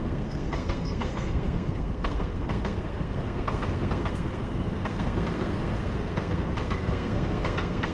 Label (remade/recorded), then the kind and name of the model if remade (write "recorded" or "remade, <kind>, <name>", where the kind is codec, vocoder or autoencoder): remade, codec, SNAC